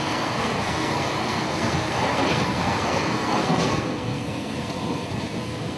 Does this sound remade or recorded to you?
remade